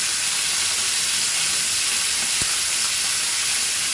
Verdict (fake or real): real